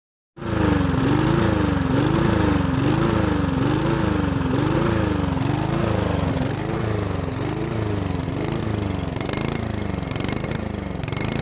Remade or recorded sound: recorded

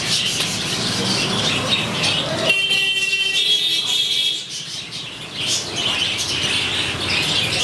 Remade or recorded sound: recorded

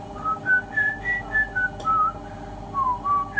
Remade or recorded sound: recorded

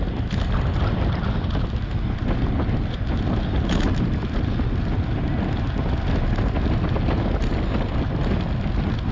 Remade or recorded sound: recorded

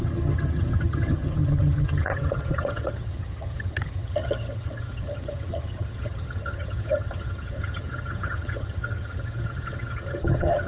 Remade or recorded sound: remade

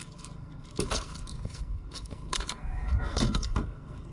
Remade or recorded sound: remade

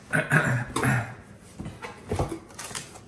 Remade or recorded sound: recorded